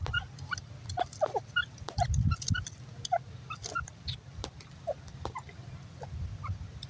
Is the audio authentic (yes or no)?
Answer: yes